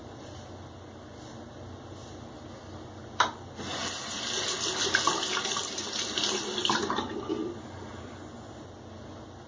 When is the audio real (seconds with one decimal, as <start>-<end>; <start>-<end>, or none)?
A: 0.0-9.5